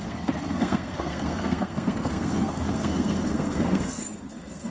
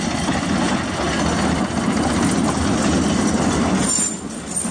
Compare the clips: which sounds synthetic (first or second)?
first